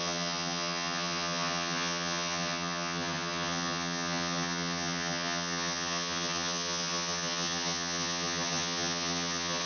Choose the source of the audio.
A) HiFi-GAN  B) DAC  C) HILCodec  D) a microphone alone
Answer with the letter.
A